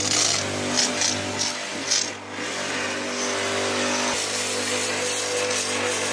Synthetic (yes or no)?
no